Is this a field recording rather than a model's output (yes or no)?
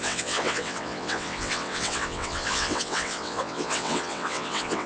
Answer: no